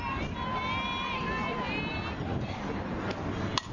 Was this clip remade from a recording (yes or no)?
no